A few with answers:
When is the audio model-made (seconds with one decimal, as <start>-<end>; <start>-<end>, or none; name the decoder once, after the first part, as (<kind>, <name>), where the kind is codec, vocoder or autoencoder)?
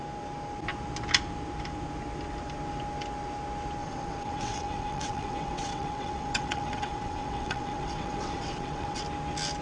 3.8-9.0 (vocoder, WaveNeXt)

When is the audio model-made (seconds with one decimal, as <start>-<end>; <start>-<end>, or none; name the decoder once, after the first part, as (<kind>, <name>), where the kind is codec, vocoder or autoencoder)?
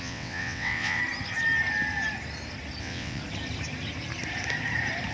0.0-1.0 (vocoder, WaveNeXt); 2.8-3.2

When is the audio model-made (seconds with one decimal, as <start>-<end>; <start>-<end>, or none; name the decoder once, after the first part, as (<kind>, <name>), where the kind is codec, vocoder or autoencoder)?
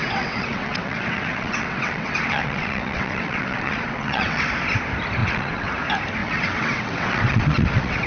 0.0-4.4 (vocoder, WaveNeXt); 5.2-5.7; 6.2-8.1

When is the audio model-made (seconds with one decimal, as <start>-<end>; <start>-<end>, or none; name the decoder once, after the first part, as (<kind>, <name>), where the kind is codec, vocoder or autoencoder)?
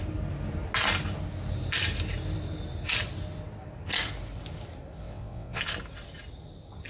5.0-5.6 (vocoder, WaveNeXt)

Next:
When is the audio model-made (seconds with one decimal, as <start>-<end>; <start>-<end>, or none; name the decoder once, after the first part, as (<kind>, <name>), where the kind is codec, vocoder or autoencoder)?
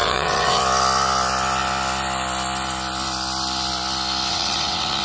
0.0-0.6 (vocoder, WaveNeXt); 4.3-5.0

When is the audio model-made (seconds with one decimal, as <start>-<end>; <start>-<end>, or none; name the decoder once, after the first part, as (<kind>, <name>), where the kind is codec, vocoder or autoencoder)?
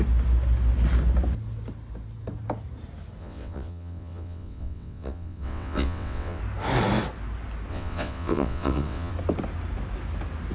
3.2-6.4 (vocoder, WaveNeXt); 7.7-9.1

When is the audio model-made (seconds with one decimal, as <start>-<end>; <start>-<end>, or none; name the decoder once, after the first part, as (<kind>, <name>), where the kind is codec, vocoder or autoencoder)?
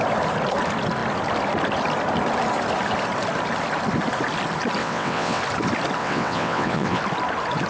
4.8-5.4 (vocoder, WaveNeXt); 6.0-7.0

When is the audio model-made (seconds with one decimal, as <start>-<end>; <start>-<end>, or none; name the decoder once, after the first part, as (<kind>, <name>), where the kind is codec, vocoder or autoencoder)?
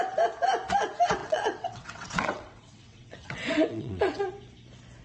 1.2-4.2 (vocoder, WaveNeXt)